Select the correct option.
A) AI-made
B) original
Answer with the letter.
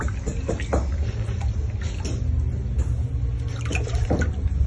B